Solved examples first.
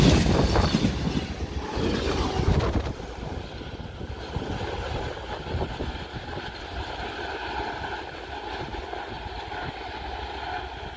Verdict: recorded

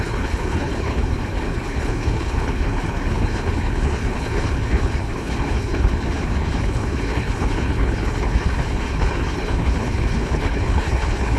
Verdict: remade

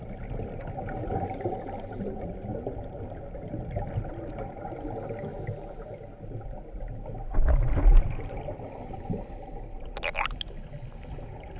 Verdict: recorded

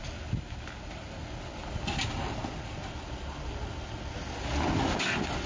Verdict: recorded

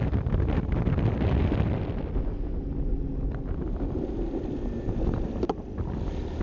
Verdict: recorded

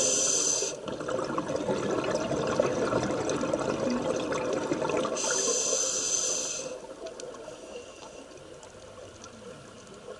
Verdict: recorded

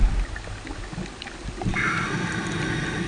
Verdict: recorded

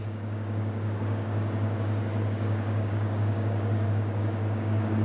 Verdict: remade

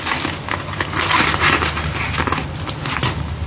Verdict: recorded